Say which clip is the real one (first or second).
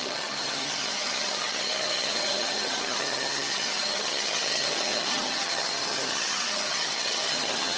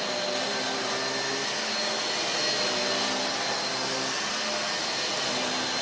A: second